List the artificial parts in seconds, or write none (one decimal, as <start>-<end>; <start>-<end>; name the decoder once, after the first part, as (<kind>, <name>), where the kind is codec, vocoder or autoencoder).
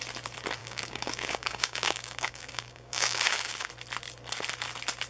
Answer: 0.6-3.7 (codec, DAC)